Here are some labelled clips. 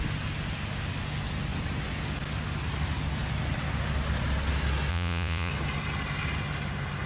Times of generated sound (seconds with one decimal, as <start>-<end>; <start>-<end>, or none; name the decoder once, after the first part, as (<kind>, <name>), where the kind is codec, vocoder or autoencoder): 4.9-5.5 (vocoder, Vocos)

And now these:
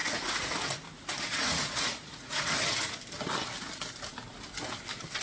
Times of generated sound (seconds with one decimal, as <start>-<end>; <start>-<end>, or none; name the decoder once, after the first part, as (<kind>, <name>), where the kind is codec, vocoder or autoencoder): 0.0-3.1 (vocoder, Vocos)

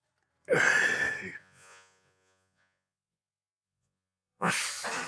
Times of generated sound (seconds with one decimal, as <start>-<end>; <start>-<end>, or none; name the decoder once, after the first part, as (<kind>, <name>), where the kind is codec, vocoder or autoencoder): 1.4-4.5 (vocoder, Vocos)

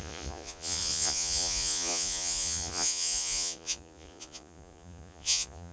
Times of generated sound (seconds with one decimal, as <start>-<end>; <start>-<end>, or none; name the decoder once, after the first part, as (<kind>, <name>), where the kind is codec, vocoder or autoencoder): 0.0-5.7 (vocoder, Vocos)